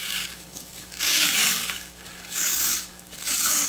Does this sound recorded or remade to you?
remade